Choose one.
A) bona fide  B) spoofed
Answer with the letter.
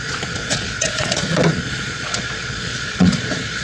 B